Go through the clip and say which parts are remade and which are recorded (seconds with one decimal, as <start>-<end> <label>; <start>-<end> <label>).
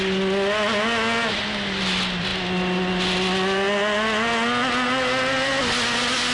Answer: 0.0-6.3 recorded